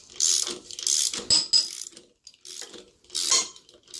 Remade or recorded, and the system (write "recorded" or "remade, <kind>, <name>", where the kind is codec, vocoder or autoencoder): recorded